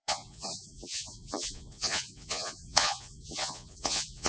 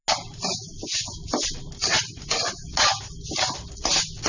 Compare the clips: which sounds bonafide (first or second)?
second